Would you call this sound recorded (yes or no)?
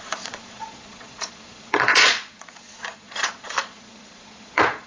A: no